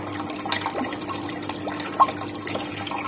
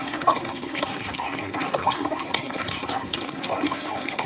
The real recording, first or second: first